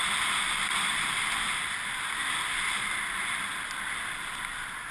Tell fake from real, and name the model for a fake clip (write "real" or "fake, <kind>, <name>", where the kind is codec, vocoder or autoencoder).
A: real